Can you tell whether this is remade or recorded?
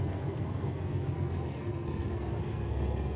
remade